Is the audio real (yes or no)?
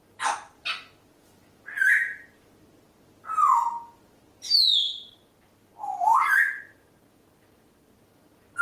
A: yes